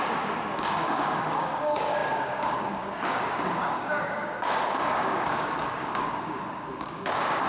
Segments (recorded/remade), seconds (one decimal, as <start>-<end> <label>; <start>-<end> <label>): 0.0-7.5 remade